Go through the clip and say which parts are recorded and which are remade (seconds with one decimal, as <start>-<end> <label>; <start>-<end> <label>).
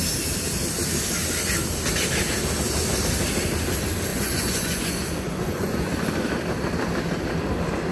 0.0-4.1 recorded; 4.1-5.9 remade; 5.9-7.9 recorded